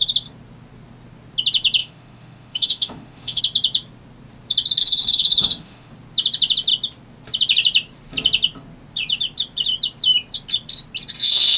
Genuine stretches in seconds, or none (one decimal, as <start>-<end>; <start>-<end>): 0.0-1.8; 3.4-4.8; 5.9-11.6